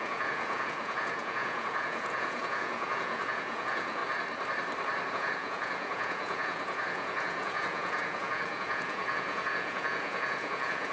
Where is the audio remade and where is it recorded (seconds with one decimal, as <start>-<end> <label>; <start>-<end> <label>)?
0.0-4.0 remade; 4.0-5.1 recorded; 5.1-10.9 remade